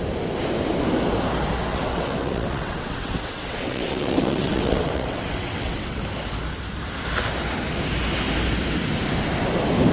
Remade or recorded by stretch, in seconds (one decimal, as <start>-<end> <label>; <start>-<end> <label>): 0.0-1.7 recorded; 1.7-6.0 remade; 6.0-9.9 recorded

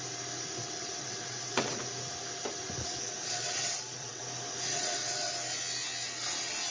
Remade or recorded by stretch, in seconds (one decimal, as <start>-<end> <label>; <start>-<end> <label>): 0.0-0.6 recorded; 0.6-1.8 remade; 1.8-2.8 recorded; 2.8-4.2 remade; 4.2-4.7 recorded; 4.7-5.3 remade; 5.3-6.7 recorded

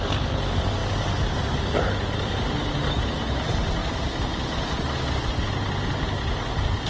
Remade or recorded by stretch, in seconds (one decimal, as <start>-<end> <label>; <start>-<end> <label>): 0.0-6.9 recorded

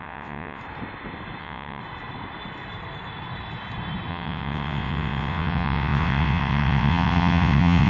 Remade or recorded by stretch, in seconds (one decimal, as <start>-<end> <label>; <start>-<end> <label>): 0.0-0.6 remade; 0.6-1.4 recorded; 1.4-1.8 remade; 1.8-4.1 recorded; 4.1-7.9 remade

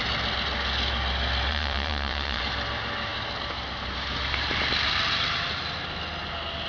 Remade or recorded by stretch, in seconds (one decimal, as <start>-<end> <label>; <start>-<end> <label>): 0.0-1.5 recorded; 1.5-2.4 remade; 2.4-6.7 recorded

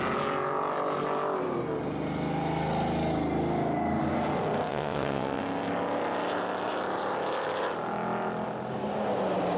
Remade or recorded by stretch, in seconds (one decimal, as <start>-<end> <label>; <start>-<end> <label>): 0.0-4.7 recorded; 4.7-5.4 remade; 5.4-9.6 recorded

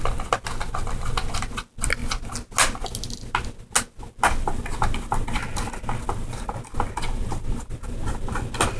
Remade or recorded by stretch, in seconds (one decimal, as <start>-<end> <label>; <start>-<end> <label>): 0.0-8.8 recorded